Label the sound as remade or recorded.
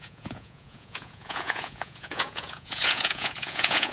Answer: remade